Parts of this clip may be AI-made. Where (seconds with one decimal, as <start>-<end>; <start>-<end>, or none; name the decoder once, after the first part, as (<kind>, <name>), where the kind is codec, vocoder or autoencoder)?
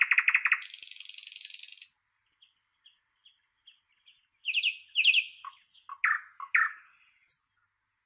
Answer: 2.0-5.8 (vocoder, BigVGAN v2)